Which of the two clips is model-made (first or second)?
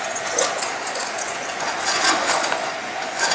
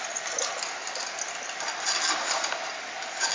first